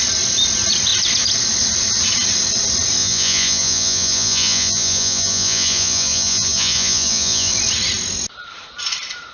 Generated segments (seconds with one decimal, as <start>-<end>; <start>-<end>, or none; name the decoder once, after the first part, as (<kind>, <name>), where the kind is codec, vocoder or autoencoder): 3.0-7.5 (vocoder, Vocos)